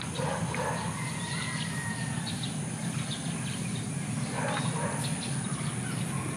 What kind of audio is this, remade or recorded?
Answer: recorded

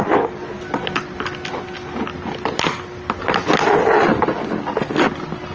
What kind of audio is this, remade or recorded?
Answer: recorded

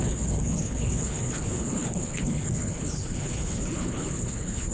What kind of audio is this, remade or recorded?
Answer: remade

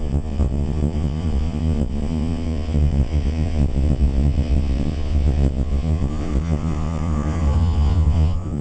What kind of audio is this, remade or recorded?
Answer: remade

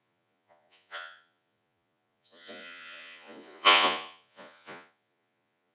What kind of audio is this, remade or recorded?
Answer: remade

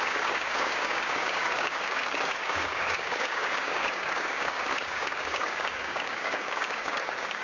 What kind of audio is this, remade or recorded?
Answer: remade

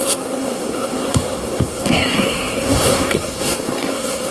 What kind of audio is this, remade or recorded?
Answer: remade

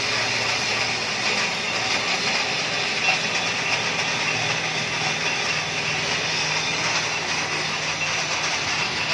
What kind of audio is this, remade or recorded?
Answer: recorded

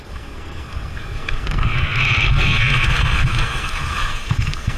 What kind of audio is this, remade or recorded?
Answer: remade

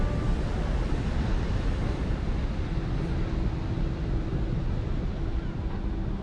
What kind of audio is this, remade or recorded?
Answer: recorded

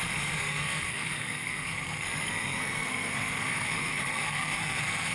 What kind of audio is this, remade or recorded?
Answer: remade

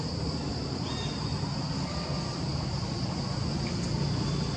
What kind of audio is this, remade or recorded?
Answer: recorded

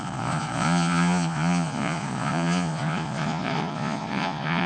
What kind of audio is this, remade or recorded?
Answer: remade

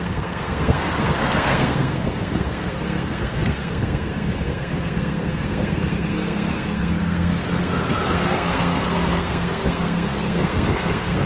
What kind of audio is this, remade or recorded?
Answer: remade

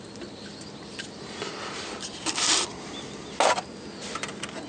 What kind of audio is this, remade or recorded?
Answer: recorded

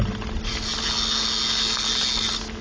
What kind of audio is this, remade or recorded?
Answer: recorded